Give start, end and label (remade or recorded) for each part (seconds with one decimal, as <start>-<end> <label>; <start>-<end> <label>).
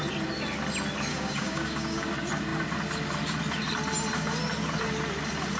0.0-1.1 recorded; 1.1-2.1 remade; 2.1-5.6 recorded